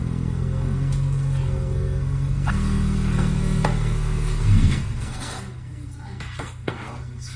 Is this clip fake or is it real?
fake